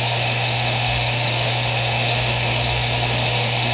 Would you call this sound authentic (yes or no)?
no